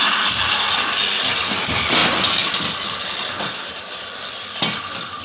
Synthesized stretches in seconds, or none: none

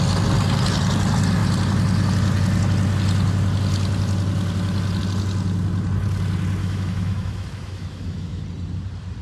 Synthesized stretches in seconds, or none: 6.6-8.4 (autoencoder, DAC-VAE)

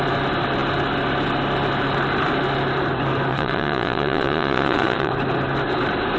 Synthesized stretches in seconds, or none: 3.3-5.1 (vocoder, Vocos)

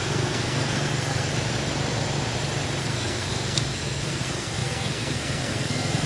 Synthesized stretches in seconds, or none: 0.0-1.3 (codec, SNAC); 2.8-6.1